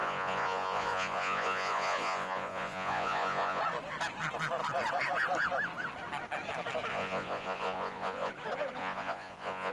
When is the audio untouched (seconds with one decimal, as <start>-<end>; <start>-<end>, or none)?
3.6-6.9; 8.3-8.8